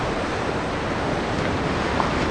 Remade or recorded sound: recorded